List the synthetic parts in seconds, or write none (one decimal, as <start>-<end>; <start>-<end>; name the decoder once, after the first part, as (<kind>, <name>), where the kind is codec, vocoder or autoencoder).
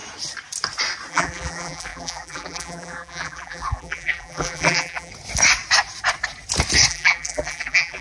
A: 1.1-5.1 (vocoder, BigVGAN v2); 6.9-8.0